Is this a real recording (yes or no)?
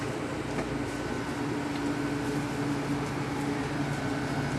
yes